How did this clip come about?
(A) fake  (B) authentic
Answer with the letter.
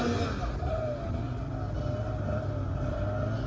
B